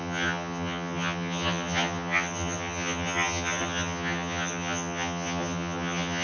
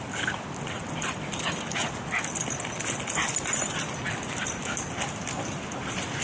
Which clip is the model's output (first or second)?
first